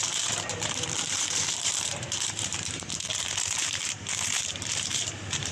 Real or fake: fake